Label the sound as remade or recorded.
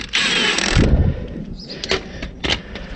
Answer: recorded